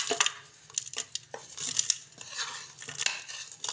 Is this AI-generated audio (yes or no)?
no